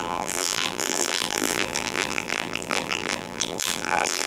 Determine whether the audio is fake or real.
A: fake